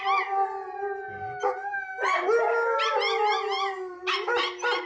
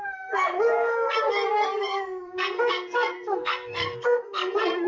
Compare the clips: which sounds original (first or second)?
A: first